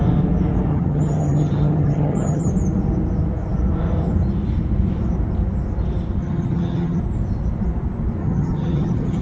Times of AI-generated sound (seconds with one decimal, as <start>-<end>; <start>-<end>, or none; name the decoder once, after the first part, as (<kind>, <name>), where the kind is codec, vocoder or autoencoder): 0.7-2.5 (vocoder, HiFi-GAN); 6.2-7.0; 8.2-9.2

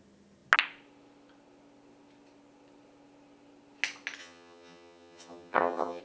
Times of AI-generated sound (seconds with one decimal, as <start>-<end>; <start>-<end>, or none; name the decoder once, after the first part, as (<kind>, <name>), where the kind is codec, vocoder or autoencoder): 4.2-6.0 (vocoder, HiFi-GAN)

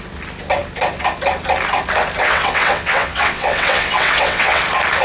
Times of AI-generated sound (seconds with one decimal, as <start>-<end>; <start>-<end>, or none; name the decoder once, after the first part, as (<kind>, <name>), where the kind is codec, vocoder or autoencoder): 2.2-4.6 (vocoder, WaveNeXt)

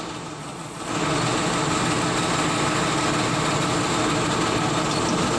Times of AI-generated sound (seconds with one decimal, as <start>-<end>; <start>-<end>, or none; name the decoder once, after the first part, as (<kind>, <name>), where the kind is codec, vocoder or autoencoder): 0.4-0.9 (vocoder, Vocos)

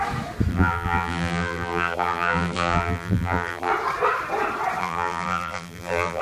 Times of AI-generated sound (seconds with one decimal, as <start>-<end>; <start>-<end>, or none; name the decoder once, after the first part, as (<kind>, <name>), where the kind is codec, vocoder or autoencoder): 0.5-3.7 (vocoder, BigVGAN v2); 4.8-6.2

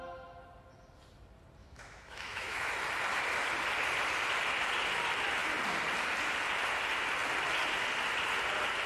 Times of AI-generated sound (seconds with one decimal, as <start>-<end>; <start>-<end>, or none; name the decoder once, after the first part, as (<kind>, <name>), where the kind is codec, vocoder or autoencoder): 1.6-2.7 (autoencoder, DAC-VAE)